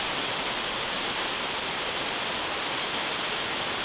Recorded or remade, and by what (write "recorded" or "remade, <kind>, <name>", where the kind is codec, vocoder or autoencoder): recorded